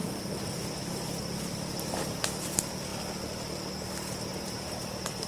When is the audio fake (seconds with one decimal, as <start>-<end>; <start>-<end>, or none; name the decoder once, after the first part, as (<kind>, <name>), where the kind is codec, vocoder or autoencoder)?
none